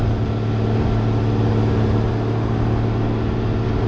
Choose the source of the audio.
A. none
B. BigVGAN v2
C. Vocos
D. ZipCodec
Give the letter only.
A